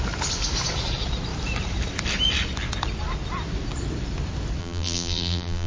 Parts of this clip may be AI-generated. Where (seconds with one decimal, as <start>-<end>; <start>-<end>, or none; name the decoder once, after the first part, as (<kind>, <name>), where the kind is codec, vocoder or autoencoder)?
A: 4.6-5.7 (vocoder, BigVGAN v2)